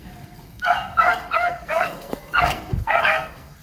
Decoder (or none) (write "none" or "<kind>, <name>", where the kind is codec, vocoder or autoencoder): codec, SNAC